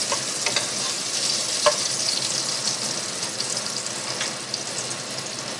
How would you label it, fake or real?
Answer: real